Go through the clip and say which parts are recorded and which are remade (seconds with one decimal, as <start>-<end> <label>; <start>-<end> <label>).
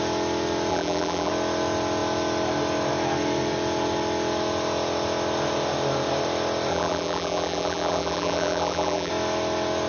0.0-0.7 recorded; 0.7-1.3 remade; 1.3-6.7 recorded; 6.7-9.1 remade; 9.1-9.9 recorded